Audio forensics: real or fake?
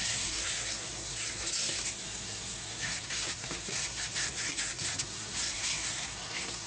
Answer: fake